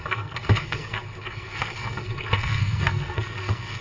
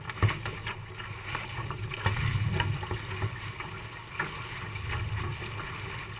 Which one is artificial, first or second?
first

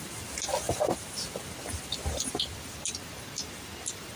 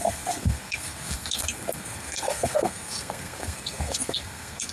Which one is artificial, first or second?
second